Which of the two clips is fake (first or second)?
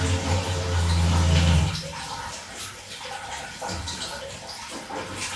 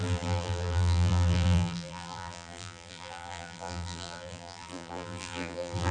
second